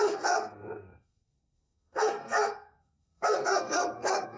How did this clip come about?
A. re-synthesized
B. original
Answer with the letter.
A